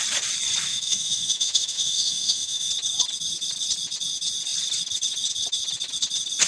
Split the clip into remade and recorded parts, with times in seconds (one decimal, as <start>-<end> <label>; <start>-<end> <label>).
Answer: 0.0-0.7 recorded; 0.7-2.7 remade; 2.7-6.5 recorded